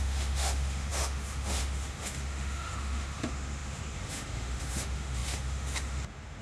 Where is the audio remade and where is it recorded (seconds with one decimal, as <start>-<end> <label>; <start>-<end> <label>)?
0.0-6.4 remade